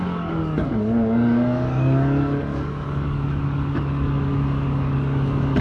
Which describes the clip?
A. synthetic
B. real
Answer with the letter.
A